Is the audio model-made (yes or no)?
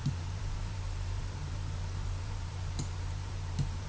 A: yes